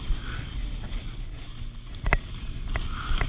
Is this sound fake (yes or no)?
no